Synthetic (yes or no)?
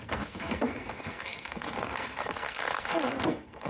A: yes